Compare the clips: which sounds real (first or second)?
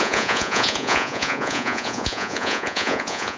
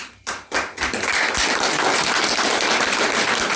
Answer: second